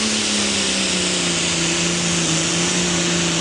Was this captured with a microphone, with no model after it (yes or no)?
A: yes